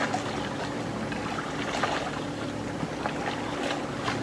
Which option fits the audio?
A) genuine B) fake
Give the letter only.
A